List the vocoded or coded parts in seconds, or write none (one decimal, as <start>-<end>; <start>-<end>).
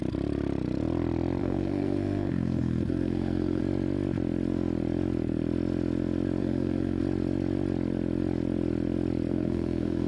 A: 1.4-3.6; 6.4-7.0; 9.3-10.1